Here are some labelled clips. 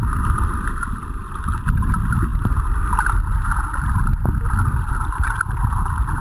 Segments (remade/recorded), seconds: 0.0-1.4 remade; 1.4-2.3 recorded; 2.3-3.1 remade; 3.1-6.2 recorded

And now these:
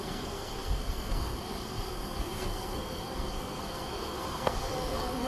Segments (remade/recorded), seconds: 0.0-5.3 remade

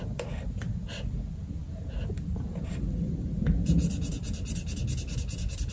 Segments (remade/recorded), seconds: 0.0-5.7 recorded

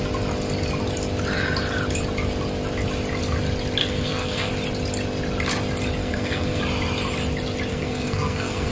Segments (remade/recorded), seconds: 0.0-3.8 recorded; 3.8-4.5 remade; 4.5-6.0 recorded; 6.0-6.6 remade; 6.6-7.7 recorded; 7.7-8.7 remade

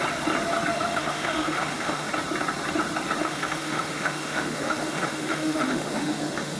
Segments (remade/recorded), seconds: 0.0-0.7 recorded; 0.7-2.1 remade; 2.1-3.2 recorded; 3.2-6.6 remade